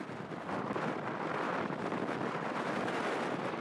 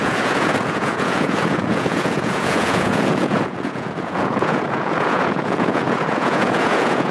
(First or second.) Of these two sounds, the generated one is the second